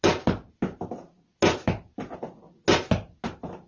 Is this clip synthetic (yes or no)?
no